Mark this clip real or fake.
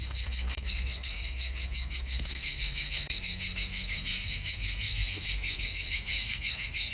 fake